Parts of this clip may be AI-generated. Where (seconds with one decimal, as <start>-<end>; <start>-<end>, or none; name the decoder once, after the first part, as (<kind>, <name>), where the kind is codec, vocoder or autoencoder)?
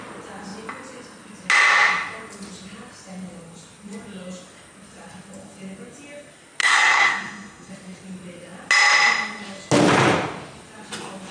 6.6-7.7 (codec, SNAC)